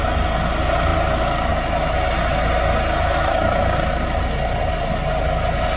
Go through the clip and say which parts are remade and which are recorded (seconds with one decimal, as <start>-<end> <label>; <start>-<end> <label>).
0.0-5.8 recorded